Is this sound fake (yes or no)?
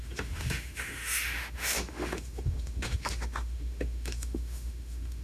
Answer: yes